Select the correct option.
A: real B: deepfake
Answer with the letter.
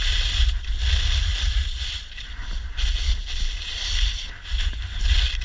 A